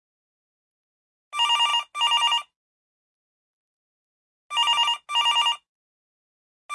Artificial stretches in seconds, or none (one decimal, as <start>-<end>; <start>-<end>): none